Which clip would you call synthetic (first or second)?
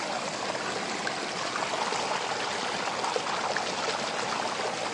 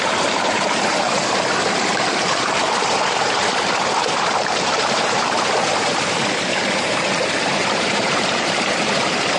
second